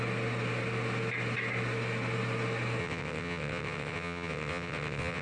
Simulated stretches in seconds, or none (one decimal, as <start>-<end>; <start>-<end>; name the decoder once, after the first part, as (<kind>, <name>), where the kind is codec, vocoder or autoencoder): 2.8-5.2 (vocoder, WaveNeXt)